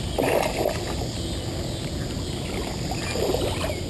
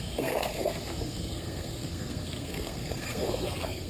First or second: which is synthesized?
second